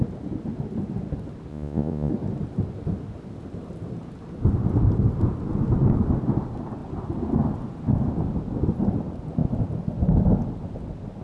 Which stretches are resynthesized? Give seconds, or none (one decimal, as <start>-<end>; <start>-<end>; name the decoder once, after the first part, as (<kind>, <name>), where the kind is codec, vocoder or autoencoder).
1.5-2.1 (vocoder, Vocos)